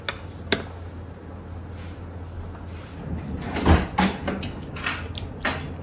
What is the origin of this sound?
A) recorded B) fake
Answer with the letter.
A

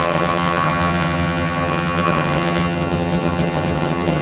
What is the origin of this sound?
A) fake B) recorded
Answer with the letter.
A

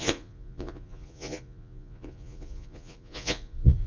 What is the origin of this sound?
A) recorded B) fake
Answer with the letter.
B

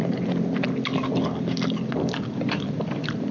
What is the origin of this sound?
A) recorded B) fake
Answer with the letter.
B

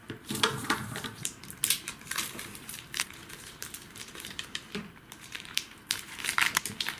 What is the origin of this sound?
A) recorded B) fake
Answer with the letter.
B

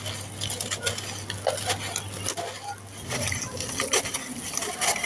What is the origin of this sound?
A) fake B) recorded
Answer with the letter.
B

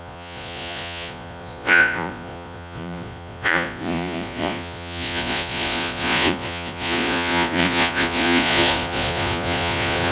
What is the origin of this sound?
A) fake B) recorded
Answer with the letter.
A